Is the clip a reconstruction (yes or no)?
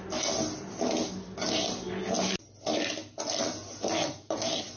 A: no